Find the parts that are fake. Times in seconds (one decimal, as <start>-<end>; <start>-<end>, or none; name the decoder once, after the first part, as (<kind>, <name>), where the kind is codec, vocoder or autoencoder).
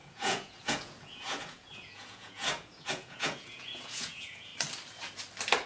0.0-4.5 (vocoder, Vocos)